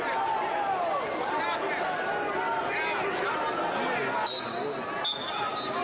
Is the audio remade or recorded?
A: recorded